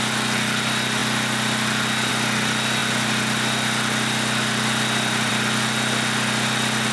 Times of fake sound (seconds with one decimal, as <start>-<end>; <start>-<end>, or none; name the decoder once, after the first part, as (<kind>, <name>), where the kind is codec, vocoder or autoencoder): none